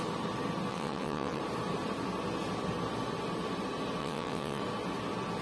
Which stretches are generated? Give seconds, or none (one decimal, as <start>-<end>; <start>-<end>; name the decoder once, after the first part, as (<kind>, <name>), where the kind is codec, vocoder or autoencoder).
0.7-1.4 (vocoder, WaveNeXt); 4.0-4.6